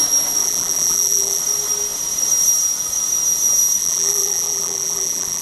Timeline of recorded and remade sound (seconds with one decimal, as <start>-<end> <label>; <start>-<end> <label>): 0.0-0.4 recorded; 0.4-1.4 remade; 1.4-3.8 recorded; 3.8-5.4 remade